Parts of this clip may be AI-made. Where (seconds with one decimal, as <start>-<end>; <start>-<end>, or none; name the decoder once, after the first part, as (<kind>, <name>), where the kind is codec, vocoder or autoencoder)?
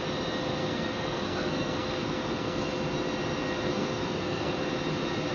0.6-2.7 (codec, SNAC); 3.7-4.5